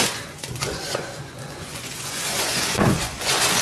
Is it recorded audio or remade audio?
remade